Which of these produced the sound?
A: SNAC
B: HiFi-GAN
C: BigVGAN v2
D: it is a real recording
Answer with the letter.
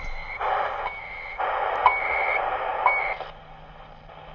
D